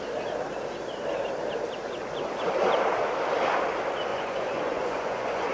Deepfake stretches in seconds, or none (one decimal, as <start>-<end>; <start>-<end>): 4.1-5.5